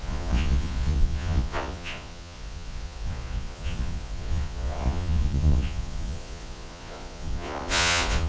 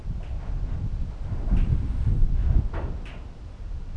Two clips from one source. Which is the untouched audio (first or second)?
second